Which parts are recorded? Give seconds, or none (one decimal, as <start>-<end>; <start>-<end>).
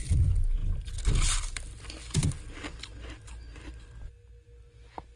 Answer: 0.0-5.2